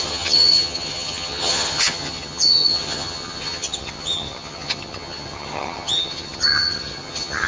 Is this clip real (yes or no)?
no